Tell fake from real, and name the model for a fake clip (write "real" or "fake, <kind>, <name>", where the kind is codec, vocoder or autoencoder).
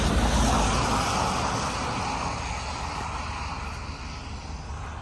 real